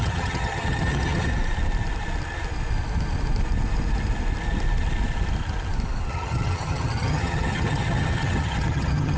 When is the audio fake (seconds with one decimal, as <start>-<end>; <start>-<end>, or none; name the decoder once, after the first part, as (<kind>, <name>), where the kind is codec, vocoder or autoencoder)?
0.0-1.3 (vocoder, HiFi-GAN); 6.1-9.2